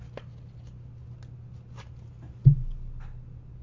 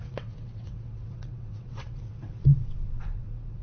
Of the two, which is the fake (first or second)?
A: second